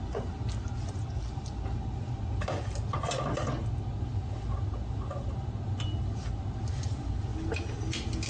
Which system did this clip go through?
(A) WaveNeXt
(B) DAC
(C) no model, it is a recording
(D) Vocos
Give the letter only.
C